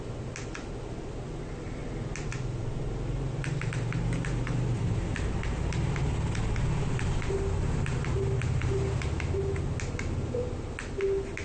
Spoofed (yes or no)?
no